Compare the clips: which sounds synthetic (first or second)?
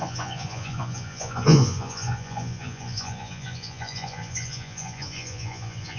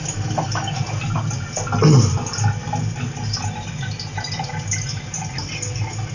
first